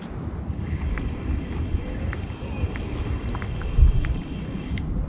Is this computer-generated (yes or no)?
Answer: no